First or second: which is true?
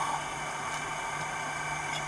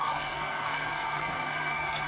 first